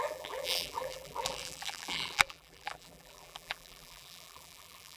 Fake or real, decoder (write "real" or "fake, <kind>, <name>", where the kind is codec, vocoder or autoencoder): fake, vocoder, BigVGAN v2